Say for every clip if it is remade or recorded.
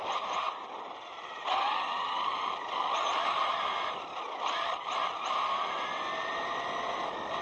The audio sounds recorded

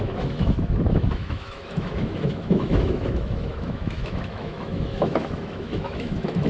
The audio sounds remade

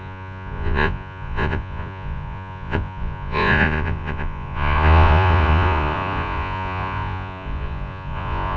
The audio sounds remade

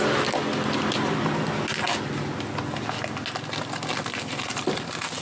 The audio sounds recorded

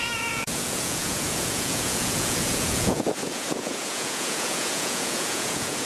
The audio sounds remade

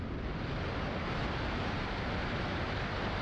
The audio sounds recorded